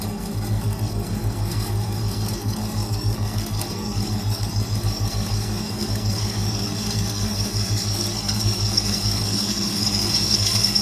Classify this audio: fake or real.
fake